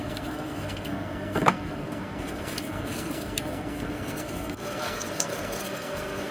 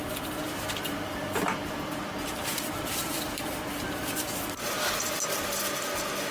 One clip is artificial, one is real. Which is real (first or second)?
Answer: second